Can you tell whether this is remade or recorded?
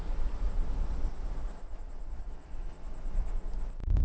recorded